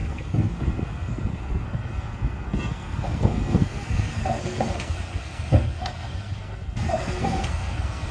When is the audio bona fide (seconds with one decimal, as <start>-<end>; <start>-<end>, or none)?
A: none